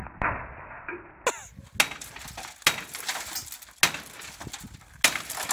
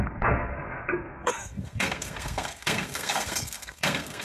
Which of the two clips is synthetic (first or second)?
second